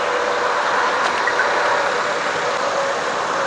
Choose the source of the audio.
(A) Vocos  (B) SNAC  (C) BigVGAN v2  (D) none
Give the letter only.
D